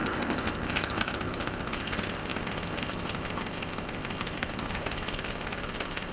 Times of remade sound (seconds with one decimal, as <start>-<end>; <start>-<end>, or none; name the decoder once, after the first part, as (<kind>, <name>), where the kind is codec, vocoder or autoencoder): 0.0-6.1 (codec, ZipCodec)